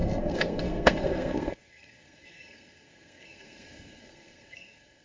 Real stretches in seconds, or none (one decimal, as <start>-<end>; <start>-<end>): none